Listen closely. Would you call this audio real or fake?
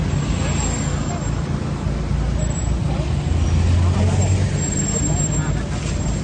real